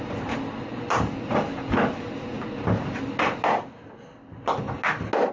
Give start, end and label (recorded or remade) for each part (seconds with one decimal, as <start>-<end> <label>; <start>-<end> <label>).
0.0-5.3 recorded

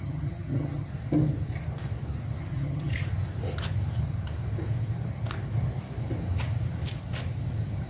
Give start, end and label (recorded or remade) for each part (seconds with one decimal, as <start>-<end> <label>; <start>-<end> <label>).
0.0-0.9 remade; 0.9-2.4 recorded; 2.4-2.9 remade; 2.9-7.9 recorded